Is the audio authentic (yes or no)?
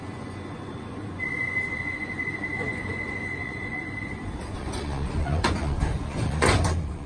no